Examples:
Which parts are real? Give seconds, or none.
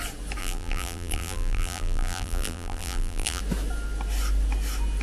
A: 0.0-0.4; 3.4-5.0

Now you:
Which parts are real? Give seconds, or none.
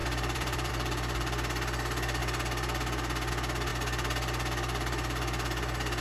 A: 0.7-6.0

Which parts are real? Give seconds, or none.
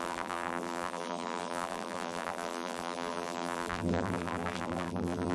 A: none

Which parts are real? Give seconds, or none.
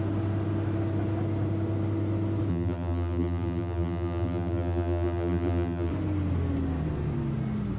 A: 0.0-2.5; 5.9-7.8